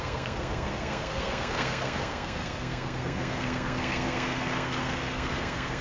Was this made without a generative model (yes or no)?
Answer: no